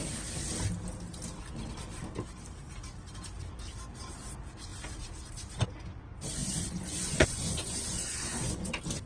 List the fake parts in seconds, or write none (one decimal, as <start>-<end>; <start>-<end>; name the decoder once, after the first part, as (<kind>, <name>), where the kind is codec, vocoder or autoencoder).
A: 6.4-8.7 (vocoder, Vocos)